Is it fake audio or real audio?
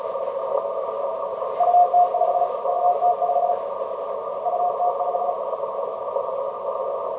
real